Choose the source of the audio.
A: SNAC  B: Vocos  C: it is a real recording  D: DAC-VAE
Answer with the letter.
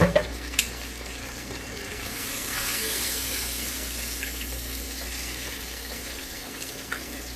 A